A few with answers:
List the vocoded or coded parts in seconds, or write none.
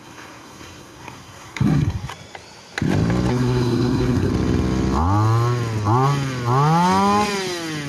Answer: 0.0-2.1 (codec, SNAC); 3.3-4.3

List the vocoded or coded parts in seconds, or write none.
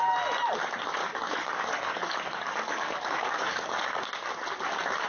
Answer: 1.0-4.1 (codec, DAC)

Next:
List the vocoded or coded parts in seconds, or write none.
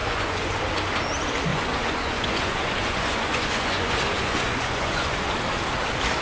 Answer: 0.0-0.6 (vocoder, Vocos); 1.5-5.2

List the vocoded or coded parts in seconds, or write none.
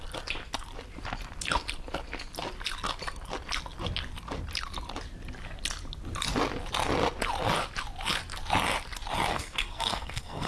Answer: 9.3-10.5 (codec, SNAC)